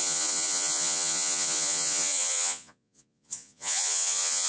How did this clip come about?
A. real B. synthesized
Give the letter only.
B